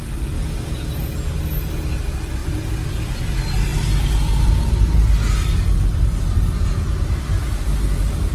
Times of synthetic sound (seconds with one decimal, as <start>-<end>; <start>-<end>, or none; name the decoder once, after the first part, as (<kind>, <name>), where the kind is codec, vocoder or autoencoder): 2.4-3.3 (vocoder, BigVGAN v2)